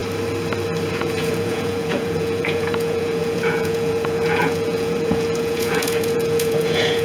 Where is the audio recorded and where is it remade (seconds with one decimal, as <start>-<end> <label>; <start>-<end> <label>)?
0.0-0.9 recorded; 0.9-7.0 remade